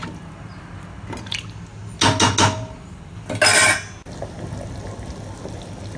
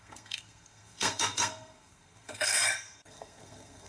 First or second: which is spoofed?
second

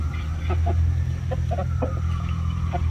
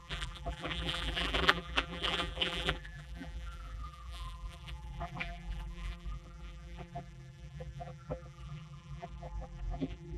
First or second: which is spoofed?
second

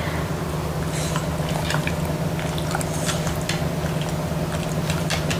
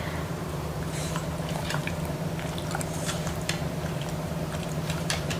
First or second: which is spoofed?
second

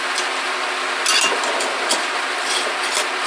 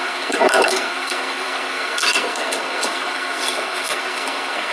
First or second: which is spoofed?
second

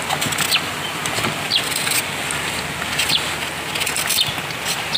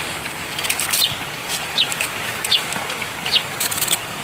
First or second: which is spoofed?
second